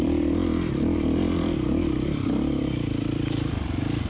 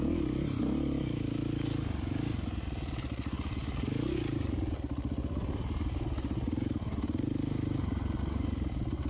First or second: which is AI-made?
first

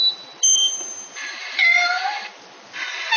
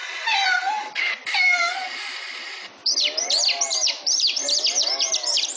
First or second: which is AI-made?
second